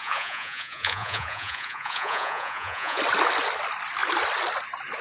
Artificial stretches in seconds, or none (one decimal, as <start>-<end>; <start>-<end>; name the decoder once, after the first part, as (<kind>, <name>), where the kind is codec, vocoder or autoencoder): 0.0-3.0 (vocoder, Vocos)